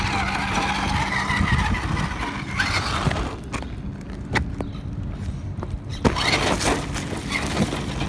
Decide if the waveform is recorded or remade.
recorded